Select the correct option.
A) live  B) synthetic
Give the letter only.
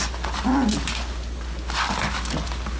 A